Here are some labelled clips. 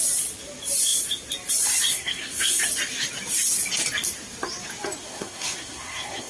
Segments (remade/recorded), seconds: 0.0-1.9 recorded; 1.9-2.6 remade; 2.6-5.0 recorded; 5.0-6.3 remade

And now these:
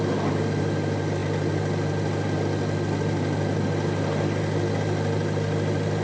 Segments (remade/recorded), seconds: 0.0-6.0 recorded